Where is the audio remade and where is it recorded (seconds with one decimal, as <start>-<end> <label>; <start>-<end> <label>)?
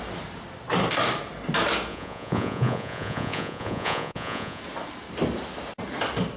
0.0-1.9 recorded; 1.9-4.6 remade; 4.6-6.4 recorded